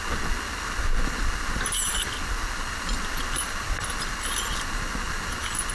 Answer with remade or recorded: recorded